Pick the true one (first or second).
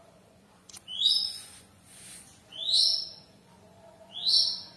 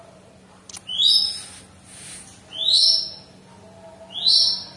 second